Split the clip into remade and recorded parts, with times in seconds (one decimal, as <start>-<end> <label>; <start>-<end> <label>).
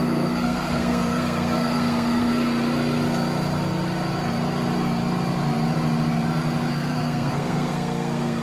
0.0-2.3 remade; 2.3-6.7 recorded; 6.7-8.4 remade